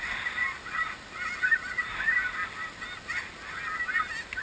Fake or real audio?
real